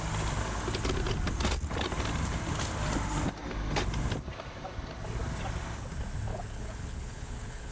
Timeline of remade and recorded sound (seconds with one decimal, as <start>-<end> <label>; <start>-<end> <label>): 0.0-6.3 recorded; 6.3-7.7 remade